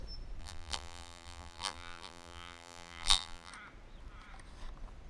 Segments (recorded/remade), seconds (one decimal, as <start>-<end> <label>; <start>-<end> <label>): 0.0-0.4 recorded; 0.4-3.5 remade; 3.5-5.1 recorded